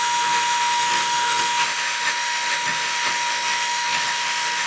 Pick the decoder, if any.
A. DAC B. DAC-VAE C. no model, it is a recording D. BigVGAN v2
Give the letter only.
B